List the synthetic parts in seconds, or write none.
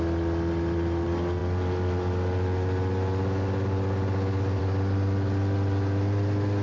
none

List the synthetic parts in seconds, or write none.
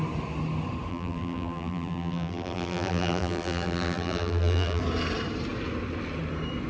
0.9-4.8 (vocoder, BigVGAN v2)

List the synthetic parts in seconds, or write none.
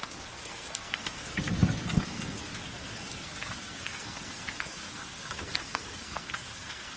0.0-7.0 (codec, SNAC)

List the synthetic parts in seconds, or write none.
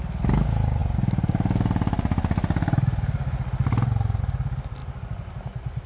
none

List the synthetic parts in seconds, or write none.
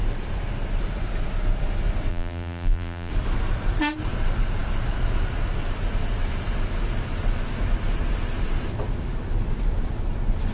2.1-3.1 (vocoder, BigVGAN v2)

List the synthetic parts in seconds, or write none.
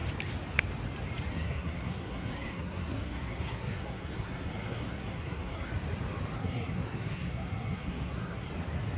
1.3-5.7 (codec, SNAC); 6.4-8.5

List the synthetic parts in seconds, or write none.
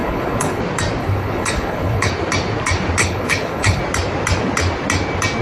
0.0-0.6 (codec, HILCodec); 1.0-2.1; 3.0-3.8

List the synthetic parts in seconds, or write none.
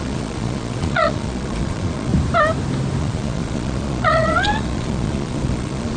0.0-2.1 (vocoder, Vocos); 3.0-6.0